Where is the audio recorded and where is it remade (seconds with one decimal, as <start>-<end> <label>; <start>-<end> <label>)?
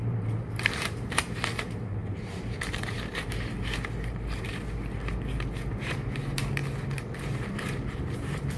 0.0-4.5 remade; 4.5-5.9 recorded; 5.9-6.6 remade; 6.6-7.5 recorded; 7.5-8.6 remade